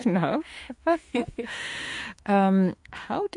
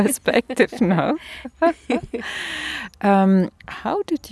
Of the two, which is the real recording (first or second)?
second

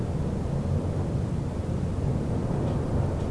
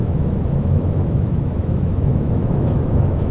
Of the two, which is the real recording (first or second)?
first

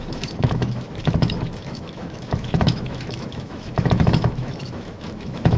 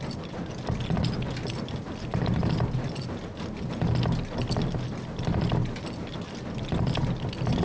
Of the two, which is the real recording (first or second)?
second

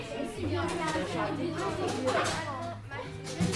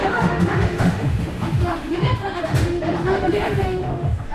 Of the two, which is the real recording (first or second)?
first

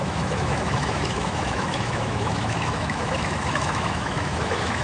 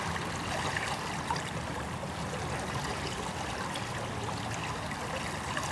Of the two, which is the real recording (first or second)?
second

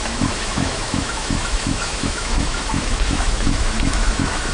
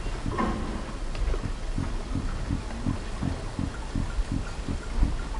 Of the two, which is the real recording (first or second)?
second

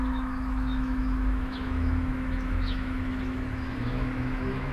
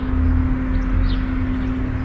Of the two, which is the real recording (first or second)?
second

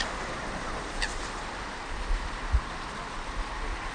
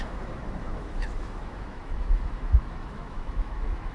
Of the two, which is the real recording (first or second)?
first